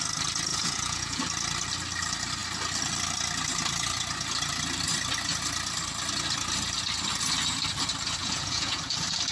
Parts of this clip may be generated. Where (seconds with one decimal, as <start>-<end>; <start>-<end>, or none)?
0.5-1.2; 8.2-8.8